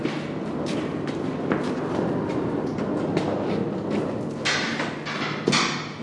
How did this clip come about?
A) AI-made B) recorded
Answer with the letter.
B